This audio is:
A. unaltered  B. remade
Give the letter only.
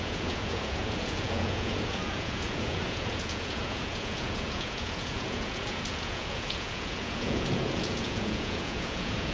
B